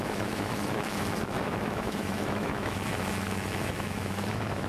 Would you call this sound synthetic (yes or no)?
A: yes